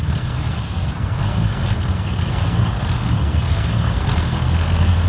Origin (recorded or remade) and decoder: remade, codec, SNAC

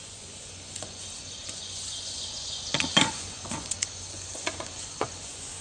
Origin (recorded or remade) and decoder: remade, vocoder, Vocos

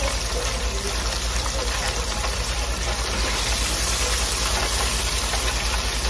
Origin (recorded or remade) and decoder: recorded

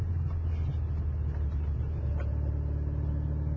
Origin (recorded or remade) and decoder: recorded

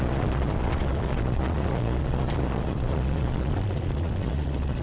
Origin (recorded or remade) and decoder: remade, vocoder, Vocos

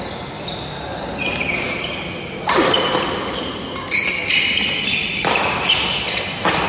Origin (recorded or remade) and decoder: recorded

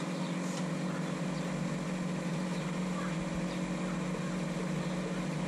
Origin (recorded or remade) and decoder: recorded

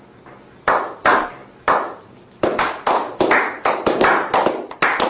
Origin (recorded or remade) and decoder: recorded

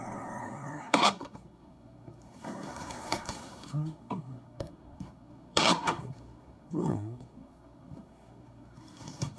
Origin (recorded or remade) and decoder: remade, codec, SNAC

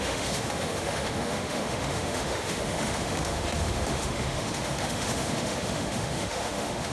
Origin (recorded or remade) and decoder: remade, autoencoder, DAC-VAE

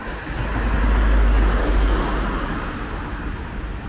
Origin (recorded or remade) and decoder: recorded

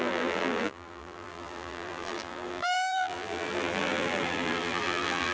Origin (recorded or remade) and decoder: remade, vocoder, BigVGAN v2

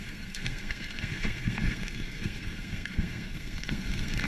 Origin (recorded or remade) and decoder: remade, codec, SNAC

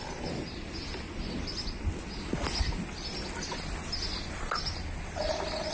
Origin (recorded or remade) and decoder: recorded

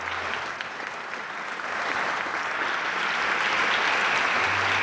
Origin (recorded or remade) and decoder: recorded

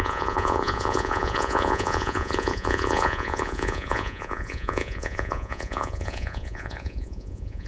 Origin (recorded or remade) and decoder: remade, vocoder, Vocos